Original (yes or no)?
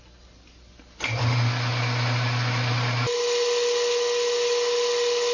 yes